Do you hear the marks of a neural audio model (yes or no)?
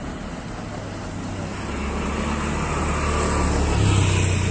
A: no